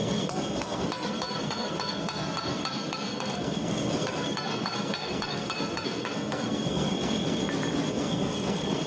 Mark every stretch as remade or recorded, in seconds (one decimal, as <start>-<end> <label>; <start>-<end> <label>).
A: 0.0-7.4 remade; 7.4-7.9 recorded; 7.9-8.9 remade